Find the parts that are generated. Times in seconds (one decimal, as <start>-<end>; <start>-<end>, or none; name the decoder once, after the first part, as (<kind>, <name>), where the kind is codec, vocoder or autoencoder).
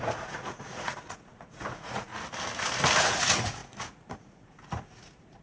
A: 0.0-2.1 (vocoder, Vocos); 3.0-5.4